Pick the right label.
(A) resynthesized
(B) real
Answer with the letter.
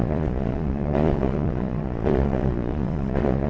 A